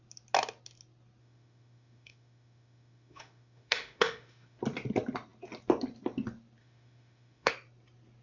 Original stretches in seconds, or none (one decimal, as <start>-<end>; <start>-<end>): 0.0-1.2; 4.6-6.6; 7.5-8.2